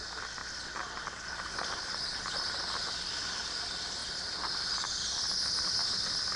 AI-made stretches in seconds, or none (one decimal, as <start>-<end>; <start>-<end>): none